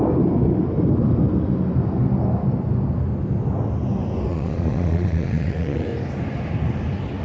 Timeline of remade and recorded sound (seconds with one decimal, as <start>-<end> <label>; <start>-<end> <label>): 0.0-4.3 recorded; 4.3-5.9 remade; 5.9-7.2 recorded